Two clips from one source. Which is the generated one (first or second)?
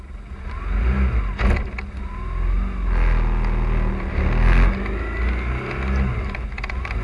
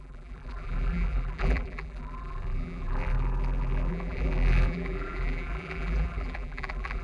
second